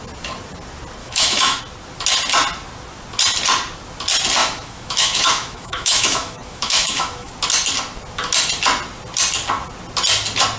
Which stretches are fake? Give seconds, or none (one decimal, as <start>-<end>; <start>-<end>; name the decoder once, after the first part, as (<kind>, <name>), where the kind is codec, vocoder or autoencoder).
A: 1.0-1.6 (autoencoder, DAC-VAE); 4.4-7.3